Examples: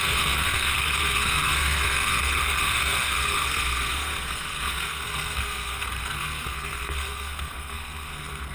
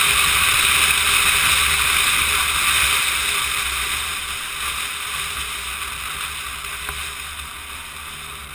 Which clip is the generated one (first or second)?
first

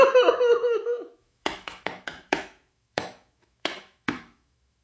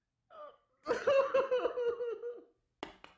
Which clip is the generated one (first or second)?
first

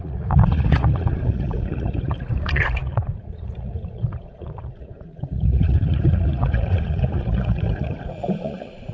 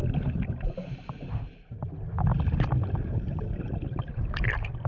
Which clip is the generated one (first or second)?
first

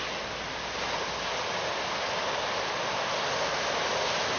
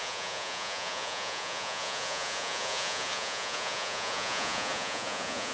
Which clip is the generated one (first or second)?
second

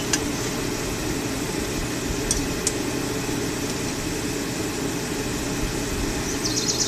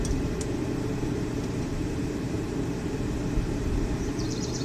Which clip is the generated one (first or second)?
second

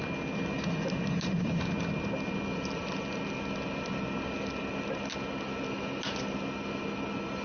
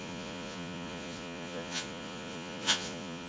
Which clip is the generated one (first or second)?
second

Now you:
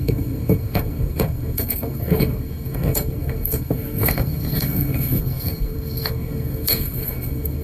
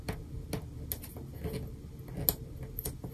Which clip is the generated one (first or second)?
first